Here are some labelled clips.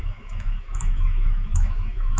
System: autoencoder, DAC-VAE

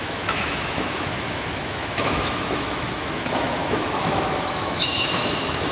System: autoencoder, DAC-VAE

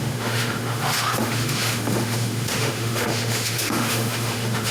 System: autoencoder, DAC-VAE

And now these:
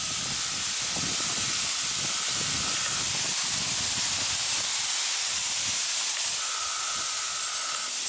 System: none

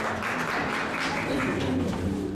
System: none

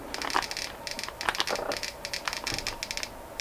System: none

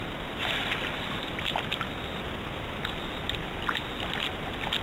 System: none